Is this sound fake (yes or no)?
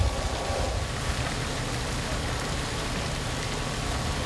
no